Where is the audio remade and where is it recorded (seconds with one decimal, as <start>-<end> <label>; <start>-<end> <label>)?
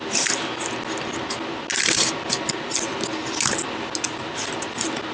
0.0-5.1 recorded